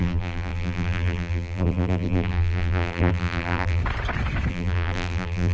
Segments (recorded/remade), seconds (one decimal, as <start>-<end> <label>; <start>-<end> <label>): 0.0-3.8 remade; 3.8-4.5 recorded; 4.5-5.5 remade